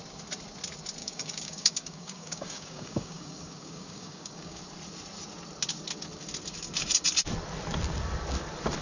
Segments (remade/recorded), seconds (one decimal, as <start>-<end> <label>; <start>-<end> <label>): 0.0-1.0 recorded; 1.0-4.6 remade; 4.6-8.8 recorded